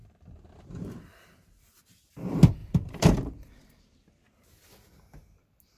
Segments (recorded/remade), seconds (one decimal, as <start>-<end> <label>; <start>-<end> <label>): 0.0-1.9 remade; 1.9-2.6 recorded; 2.6-3.8 remade; 3.8-5.8 recorded